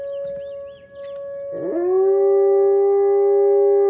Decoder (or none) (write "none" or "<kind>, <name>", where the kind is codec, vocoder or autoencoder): none